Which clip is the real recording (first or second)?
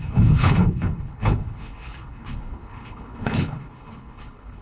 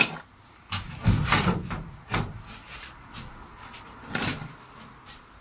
second